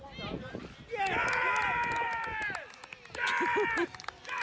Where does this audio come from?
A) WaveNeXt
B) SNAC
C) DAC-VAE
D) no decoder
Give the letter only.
D